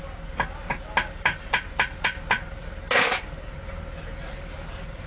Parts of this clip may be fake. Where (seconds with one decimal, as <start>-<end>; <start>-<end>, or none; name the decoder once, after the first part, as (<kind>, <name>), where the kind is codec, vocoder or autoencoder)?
none